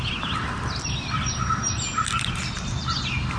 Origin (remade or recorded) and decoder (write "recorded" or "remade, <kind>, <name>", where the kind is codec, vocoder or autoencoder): recorded